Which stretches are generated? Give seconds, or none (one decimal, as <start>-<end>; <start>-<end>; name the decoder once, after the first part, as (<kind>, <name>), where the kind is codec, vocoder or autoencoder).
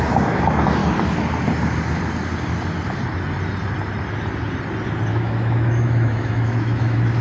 0.0-0.8 (autoencoder, DAC-VAE); 5.1-7.2